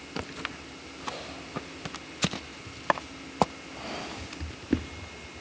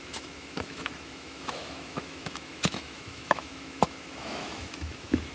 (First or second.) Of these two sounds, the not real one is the second